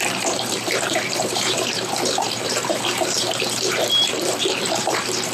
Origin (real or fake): fake